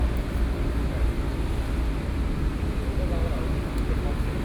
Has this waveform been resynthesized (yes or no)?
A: no